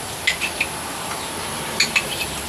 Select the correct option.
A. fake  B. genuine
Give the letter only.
B